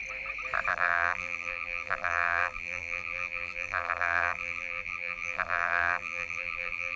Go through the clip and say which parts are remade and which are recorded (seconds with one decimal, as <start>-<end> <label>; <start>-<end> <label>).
0.0-0.7 recorded; 0.7-7.0 remade